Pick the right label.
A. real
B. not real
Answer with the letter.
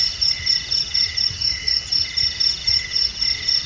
A